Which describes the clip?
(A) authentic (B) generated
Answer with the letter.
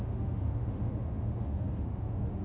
B